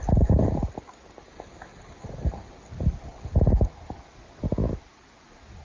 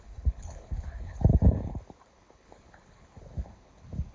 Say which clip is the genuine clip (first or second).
first